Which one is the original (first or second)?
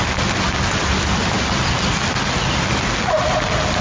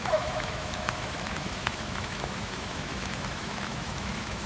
first